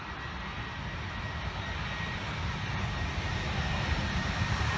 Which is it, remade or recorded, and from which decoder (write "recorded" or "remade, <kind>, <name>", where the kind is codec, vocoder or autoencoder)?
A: recorded